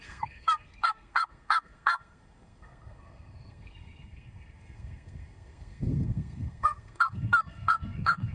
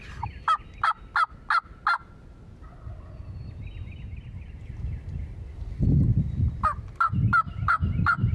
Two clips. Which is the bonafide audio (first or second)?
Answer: second